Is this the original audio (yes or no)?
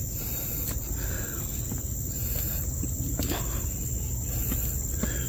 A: yes